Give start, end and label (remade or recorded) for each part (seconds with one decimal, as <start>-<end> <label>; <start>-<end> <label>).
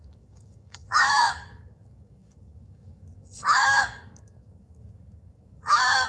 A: 0.0-6.1 remade